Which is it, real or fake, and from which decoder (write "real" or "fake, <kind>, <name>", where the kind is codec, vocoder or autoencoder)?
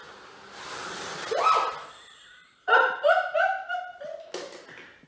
real